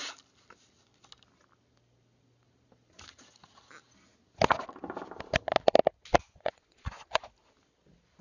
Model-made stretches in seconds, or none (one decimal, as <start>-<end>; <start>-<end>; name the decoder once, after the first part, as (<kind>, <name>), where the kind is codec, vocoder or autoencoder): 6.2-7.2 (vocoder, Vocos)